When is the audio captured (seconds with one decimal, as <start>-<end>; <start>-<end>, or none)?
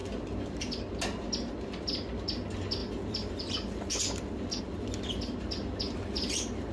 0.0-2.8; 4.6-6.7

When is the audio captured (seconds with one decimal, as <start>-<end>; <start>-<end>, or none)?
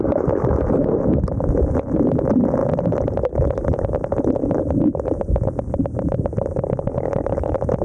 0.0-2.6; 4.6-5.8; 6.9-7.8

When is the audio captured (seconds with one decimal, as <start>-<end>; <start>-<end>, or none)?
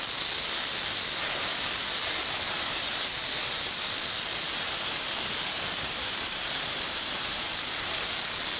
0.0-2.2; 3.9-4.3; 7.9-8.6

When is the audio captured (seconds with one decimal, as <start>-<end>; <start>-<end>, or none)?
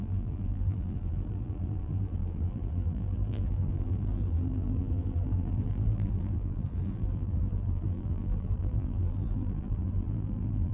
none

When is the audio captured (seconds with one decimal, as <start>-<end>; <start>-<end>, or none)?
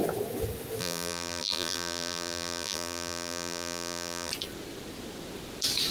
0.0-0.8; 4.3-5.9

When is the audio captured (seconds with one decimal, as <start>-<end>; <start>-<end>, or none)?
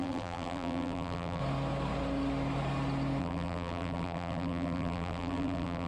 1.4-3.2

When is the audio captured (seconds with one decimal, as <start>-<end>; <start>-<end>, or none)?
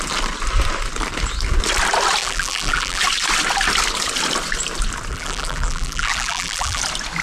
0.0-2.2; 3.0-5.1; 6.8-7.2